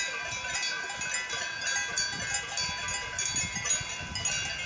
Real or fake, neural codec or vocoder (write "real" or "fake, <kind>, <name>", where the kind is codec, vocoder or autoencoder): real